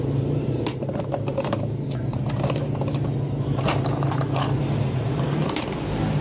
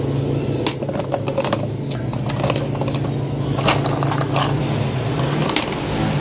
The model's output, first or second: first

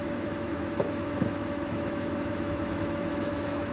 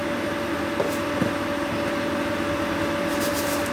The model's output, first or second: first